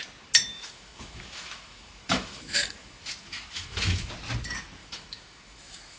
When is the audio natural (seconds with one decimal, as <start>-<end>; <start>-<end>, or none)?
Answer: 0.0-0.5; 4.1-4.8